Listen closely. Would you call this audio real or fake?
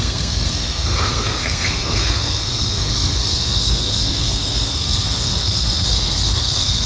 fake